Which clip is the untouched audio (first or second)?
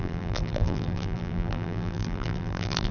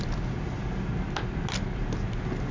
second